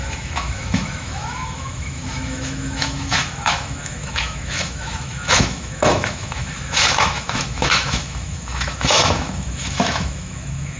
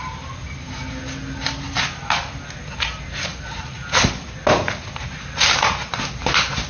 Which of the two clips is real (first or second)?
second